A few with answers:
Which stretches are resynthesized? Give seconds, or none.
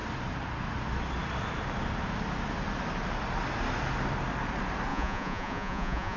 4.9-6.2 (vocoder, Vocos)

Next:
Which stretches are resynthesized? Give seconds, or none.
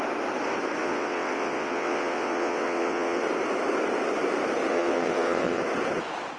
0.8-3.2 (vocoder, WaveNeXt); 4.7-5.6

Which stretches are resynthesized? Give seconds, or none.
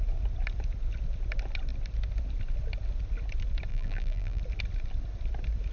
3.7-4.4 (vocoder, BigVGAN v2)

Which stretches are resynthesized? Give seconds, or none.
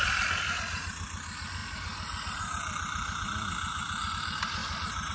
none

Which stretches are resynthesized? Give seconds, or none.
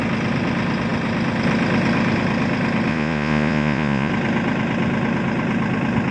2.9-4.1 (vocoder, Vocos)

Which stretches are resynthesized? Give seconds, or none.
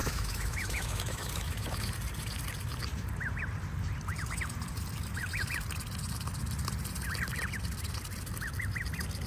0.0-1.9 (autoencoder, DAC-VAE)